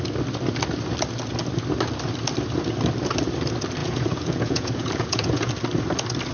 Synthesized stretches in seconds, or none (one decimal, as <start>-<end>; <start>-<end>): 3.8-5.5